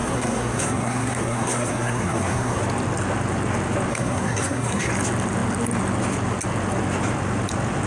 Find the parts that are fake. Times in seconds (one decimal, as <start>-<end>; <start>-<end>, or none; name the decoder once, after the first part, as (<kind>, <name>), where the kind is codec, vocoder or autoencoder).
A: 0.0-2.6 (codec, SNAC); 3.9-4.9